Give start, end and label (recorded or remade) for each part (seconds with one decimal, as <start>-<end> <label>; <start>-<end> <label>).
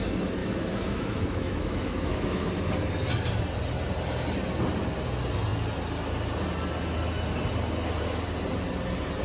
0.0-0.4 recorded; 0.4-2.5 remade; 2.5-9.2 recorded